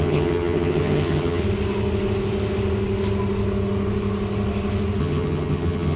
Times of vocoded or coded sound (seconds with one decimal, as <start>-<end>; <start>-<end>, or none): 0.0-1.4; 5.0-6.0